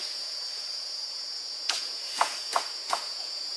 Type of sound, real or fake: fake